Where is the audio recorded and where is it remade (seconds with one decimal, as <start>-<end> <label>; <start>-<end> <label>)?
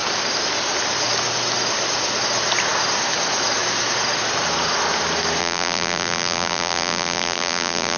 0.0-5.4 recorded; 5.4-8.0 remade